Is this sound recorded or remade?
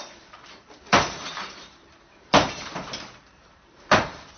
remade